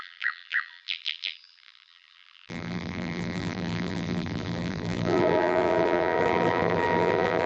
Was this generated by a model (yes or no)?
yes